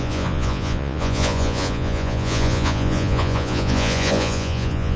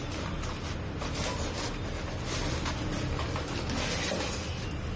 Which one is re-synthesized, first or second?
first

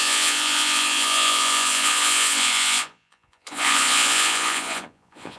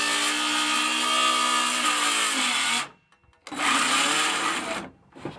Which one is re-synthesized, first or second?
first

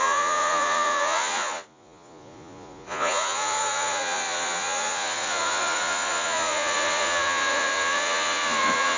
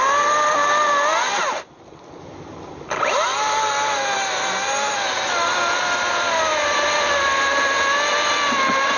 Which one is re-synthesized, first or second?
first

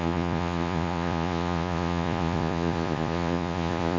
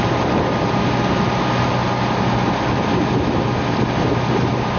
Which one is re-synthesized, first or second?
first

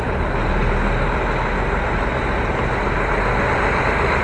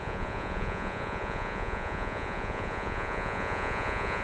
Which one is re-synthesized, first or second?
second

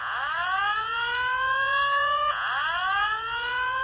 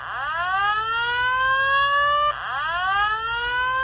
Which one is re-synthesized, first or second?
first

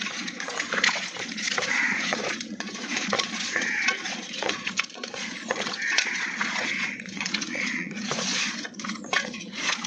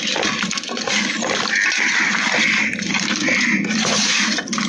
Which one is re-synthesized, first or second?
first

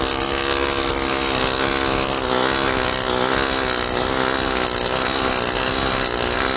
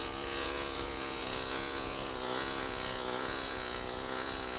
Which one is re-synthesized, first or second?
second